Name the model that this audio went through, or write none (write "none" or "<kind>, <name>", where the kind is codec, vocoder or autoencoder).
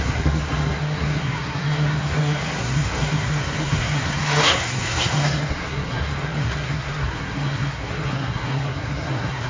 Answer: codec, SNAC